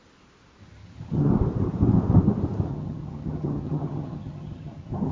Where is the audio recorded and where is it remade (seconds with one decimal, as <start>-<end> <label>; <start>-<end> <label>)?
0.0-0.6 recorded; 0.6-1.3 remade; 1.3-2.7 recorded; 2.7-5.1 remade